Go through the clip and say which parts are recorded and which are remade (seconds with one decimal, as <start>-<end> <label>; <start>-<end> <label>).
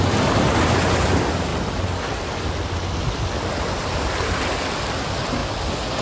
0.0-6.0 recorded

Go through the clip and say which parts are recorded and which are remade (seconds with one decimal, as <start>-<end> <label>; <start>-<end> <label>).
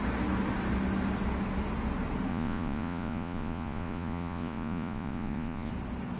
0.0-2.3 recorded; 2.3-5.7 remade; 5.7-6.2 recorded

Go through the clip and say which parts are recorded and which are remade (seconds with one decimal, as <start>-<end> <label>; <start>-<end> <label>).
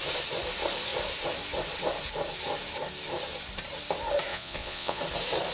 0.0-4.3 recorded; 4.3-5.0 remade; 5.0-5.5 recorded